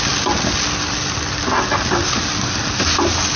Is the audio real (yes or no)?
yes